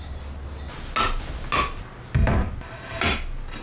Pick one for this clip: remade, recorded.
recorded